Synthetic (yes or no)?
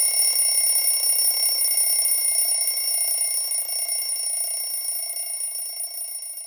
no